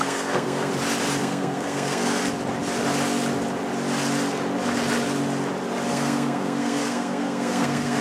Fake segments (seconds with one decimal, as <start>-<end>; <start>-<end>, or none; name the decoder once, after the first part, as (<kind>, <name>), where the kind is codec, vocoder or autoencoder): 0.0-0.7 (codec, SNAC); 1.2-2.2; 5.9-8.0